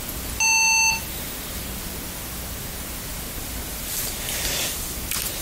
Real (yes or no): yes